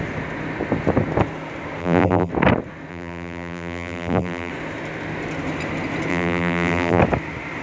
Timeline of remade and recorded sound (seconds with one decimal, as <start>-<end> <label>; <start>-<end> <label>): 0.0-1.8 recorded; 1.8-2.3 remade; 2.3-2.9 recorded; 2.9-4.5 remade; 4.5-6.1 recorded; 6.1-7.0 remade; 7.0-7.6 recorded